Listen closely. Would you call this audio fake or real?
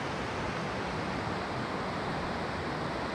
real